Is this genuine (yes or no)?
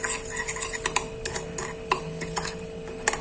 yes